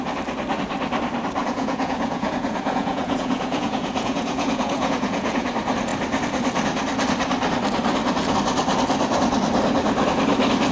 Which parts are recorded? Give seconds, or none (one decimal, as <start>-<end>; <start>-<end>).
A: 0.0-1.4; 5.5-10.7